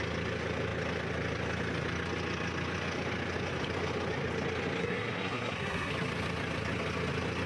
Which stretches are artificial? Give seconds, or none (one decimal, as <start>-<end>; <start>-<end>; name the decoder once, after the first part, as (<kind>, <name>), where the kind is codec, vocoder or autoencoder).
4.8-5.9 (codec, SNAC)